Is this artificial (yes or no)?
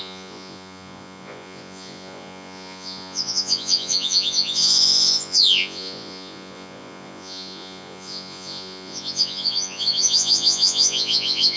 yes